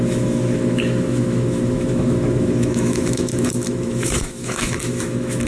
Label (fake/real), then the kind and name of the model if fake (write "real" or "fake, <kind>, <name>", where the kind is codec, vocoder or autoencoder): fake, autoencoder, DAC-VAE